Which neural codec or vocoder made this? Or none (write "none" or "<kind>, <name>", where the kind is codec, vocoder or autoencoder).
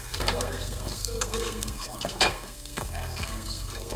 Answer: codec, SNAC